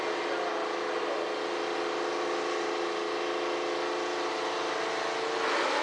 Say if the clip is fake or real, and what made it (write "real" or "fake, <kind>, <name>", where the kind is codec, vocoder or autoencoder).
real